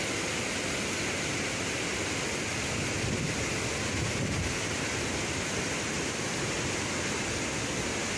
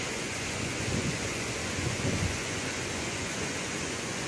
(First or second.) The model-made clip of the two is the second